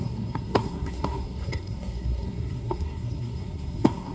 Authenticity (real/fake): fake